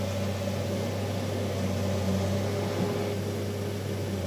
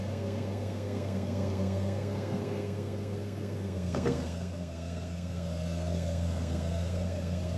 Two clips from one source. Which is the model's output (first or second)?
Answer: second